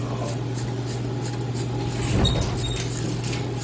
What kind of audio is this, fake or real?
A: real